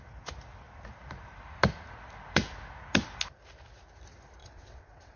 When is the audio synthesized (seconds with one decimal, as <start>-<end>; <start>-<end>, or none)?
4.4-5.2